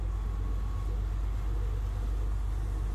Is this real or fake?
real